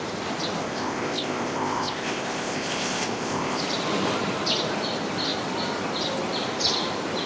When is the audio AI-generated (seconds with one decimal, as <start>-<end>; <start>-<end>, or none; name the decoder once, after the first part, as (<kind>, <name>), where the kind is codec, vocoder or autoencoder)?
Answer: 0.6-3.6 (codec, ZipCodec)